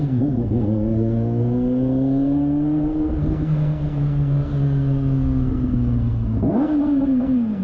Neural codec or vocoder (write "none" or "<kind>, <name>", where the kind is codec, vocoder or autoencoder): codec, SNAC